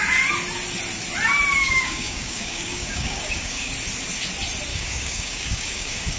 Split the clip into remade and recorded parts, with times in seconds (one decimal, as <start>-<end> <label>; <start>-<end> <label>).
0.0-1.6 recorded; 1.6-3.7 remade; 3.7-4.7 recorded; 4.7-6.2 remade